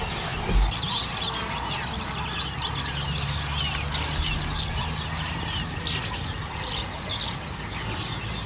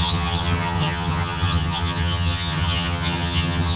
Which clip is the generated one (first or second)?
second